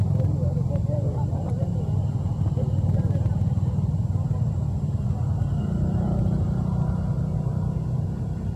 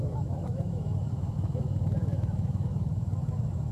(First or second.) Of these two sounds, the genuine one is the first